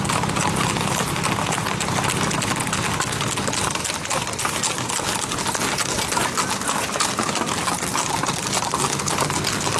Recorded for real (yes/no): yes